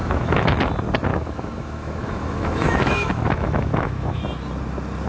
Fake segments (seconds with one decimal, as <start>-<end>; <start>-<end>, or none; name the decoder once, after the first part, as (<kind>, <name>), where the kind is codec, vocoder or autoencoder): 0.0-0.6 (autoencoder, DAC-VAE); 1.1-4.2